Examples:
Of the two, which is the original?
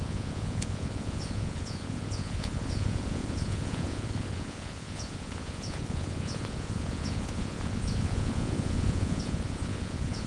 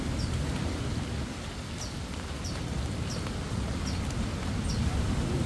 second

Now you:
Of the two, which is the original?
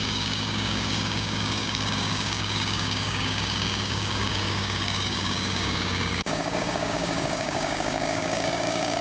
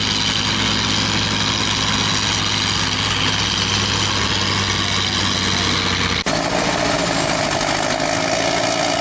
second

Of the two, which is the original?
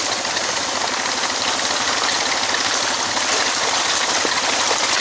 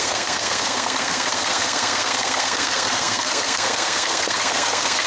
first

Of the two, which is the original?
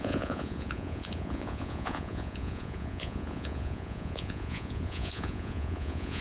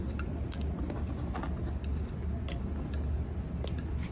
second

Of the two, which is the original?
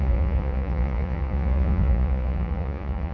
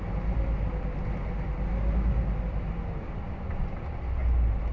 second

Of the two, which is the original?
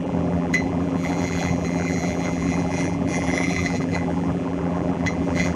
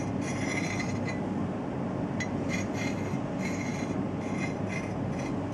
second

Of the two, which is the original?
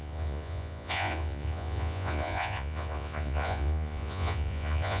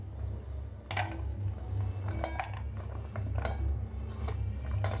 second